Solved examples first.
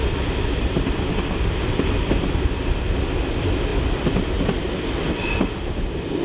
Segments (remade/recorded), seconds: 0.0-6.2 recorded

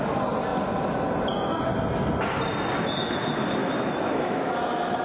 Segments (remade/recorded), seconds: 0.0-3.6 recorded; 3.6-5.0 remade

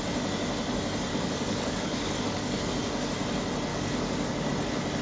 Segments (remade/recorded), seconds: 0.0-1.1 recorded; 1.1-2.7 remade; 2.7-3.7 recorded; 3.7-4.5 remade; 4.5-5.0 recorded